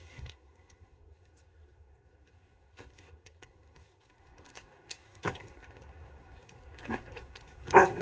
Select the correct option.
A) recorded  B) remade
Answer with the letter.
B